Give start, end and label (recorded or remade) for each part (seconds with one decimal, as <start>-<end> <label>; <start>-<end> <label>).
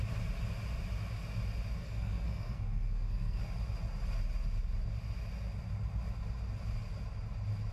0.0-1.8 recorded; 1.8-3.4 remade; 3.4-7.7 recorded